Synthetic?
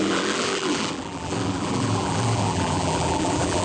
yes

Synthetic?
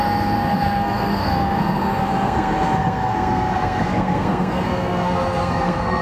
yes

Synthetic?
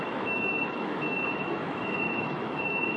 yes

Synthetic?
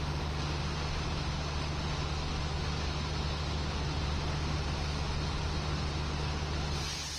no